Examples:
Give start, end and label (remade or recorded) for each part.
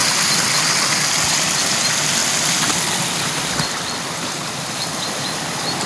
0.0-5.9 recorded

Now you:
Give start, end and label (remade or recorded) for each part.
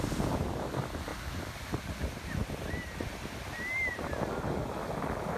0.0-5.4 recorded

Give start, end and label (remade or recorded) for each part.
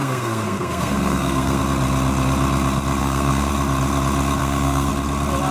0.0-1.6 remade; 1.6-3.0 recorded; 3.0-3.5 remade; 3.5-4.4 recorded; 4.4-4.9 remade; 4.9-5.5 recorded